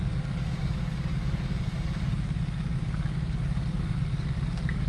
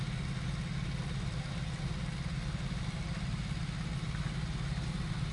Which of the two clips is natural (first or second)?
second